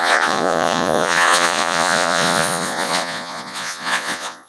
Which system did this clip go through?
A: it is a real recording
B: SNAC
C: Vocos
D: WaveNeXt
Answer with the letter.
C